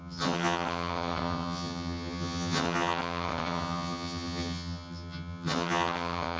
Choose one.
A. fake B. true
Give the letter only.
A